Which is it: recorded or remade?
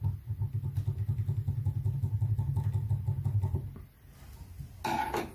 recorded